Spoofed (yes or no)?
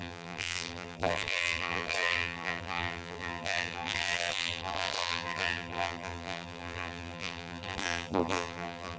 yes